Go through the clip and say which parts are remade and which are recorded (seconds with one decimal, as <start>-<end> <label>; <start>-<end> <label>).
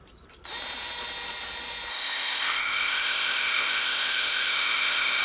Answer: 0.0-1.9 recorded; 1.9-5.2 remade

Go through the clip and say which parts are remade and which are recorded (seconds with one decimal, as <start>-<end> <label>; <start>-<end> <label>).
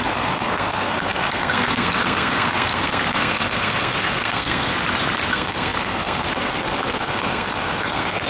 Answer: 0.0-4.7 remade; 4.7-5.3 recorded; 5.3-8.3 remade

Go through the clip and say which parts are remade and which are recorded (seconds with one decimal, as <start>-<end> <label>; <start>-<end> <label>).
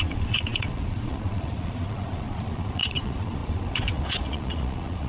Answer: 0.0-5.1 remade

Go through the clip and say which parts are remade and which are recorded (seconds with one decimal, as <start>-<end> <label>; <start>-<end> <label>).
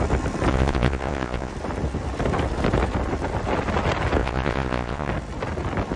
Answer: 0.0-0.5 recorded; 0.5-1.5 remade; 1.5-4.2 recorded; 4.2-5.1 remade; 5.1-6.0 recorded